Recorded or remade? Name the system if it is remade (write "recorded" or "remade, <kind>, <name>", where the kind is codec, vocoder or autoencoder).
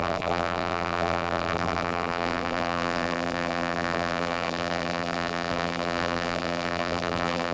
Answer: remade, vocoder, BigVGAN v2